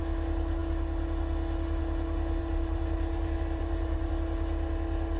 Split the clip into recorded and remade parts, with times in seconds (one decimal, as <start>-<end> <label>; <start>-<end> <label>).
0.0-2.4 recorded; 2.4-4.1 remade; 4.1-5.2 recorded